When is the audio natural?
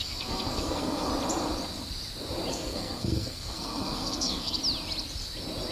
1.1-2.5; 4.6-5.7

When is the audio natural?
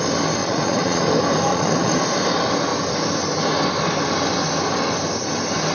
0.0-0.4; 1.0-1.5; 2.0-5.7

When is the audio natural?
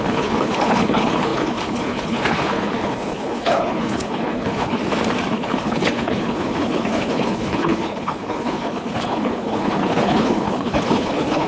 4.8-5.3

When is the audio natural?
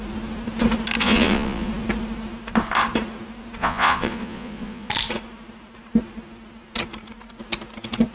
0.0-1.0; 1.7-3.6; 4.9-8.1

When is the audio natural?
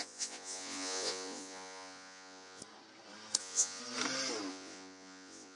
2.6-3.4; 3.8-4.5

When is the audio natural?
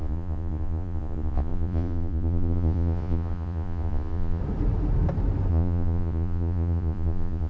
4.4-5.5